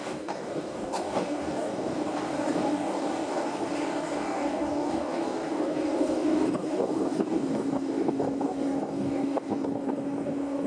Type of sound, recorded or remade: remade